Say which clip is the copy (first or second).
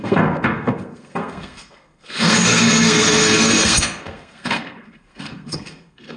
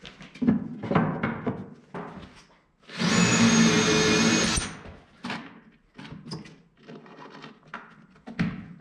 first